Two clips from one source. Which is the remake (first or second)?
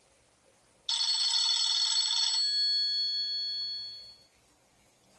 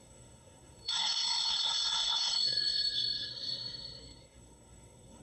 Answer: second